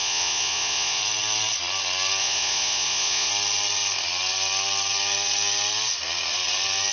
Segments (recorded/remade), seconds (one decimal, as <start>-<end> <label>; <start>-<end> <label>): 0.0-1.0 remade; 1.0-2.2 recorded; 2.2-3.3 remade; 3.3-6.9 recorded